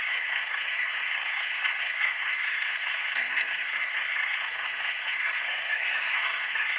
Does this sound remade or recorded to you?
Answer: remade